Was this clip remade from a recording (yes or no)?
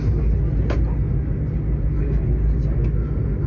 no